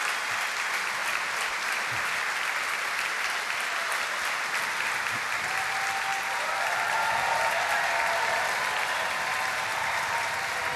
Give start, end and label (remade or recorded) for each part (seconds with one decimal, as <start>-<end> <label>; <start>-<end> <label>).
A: 0.0-10.8 recorded